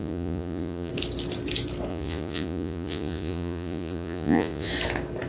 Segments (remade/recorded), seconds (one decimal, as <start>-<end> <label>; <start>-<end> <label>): 0.0-0.9 remade; 0.9-1.9 recorded; 1.9-4.7 remade; 4.7-5.3 recorded